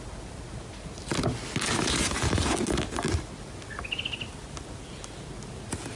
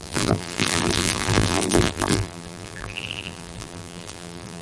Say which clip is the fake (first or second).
second